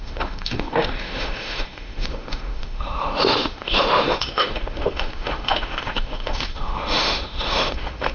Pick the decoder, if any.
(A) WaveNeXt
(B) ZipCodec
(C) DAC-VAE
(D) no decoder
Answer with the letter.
C